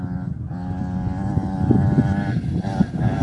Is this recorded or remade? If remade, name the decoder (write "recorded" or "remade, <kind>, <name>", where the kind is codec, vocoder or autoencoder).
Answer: recorded